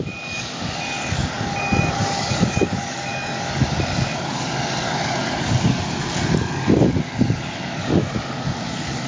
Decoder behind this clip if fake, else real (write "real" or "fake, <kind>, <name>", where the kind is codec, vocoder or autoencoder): fake, codec, DAC